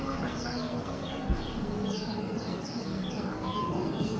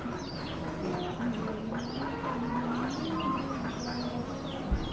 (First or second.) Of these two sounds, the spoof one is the first